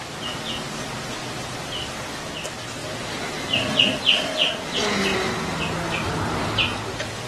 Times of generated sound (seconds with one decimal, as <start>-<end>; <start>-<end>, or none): 1.2-1.9; 2.8-5.0